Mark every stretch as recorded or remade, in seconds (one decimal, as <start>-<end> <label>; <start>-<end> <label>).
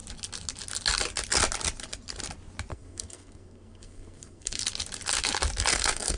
0.0-2.7 recorded; 2.7-4.6 remade; 4.6-5.7 recorded; 5.7-6.2 remade